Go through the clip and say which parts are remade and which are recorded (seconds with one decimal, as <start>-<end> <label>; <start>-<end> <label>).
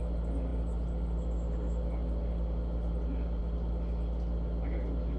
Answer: 0.0-5.2 recorded